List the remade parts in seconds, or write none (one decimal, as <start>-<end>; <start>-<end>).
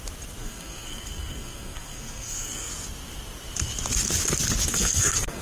0.4-2.7; 4.7-5.4